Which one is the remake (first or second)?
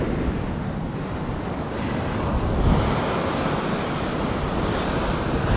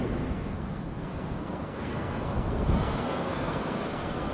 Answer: second